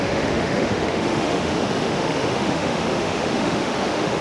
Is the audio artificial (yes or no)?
yes